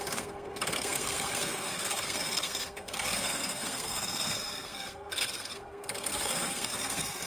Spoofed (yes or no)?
yes